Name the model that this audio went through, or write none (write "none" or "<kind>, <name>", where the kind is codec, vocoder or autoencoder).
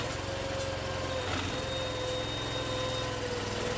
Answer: none